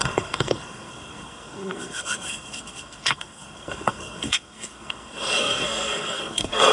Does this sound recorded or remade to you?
remade